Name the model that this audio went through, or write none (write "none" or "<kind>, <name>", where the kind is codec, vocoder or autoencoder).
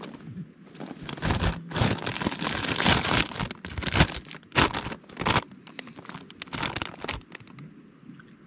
none